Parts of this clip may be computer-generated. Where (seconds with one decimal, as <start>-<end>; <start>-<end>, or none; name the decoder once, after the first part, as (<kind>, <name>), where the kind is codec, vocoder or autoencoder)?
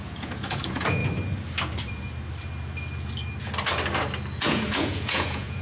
0.0-1.0 (vocoder, Vocos); 4.4-5.6